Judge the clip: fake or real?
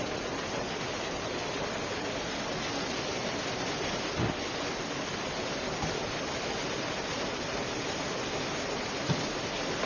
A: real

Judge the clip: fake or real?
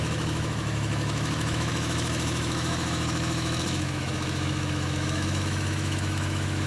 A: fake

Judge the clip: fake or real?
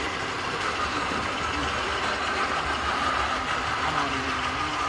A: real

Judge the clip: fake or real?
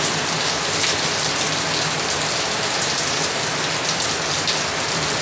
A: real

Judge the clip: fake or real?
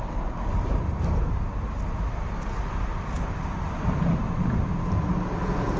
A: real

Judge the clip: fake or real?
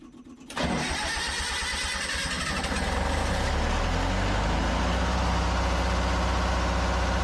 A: real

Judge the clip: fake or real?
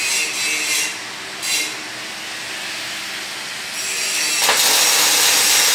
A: real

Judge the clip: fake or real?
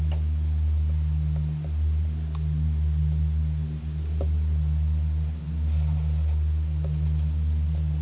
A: real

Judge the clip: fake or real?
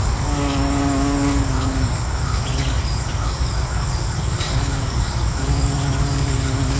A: fake